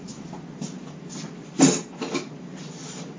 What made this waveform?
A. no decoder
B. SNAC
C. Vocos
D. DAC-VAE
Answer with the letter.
A